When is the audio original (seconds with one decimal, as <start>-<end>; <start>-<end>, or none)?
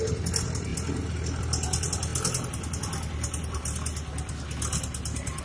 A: 0.0-5.4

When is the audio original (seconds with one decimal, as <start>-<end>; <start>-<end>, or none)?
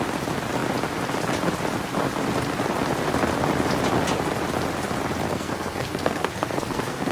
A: 0.0-5.3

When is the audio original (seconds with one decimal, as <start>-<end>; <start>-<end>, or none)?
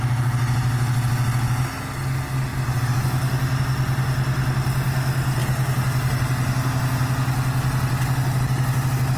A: 0.0-9.2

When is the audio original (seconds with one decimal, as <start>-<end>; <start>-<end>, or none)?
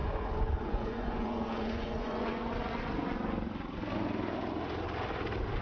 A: 2.5-5.6